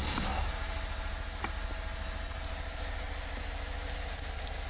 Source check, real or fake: real